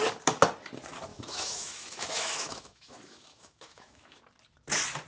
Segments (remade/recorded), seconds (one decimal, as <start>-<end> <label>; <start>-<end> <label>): 0.0-1.1 recorded; 1.1-4.2 remade; 4.2-5.1 recorded